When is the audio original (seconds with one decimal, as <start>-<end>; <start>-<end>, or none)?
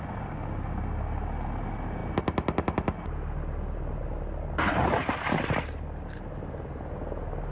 0.0-7.5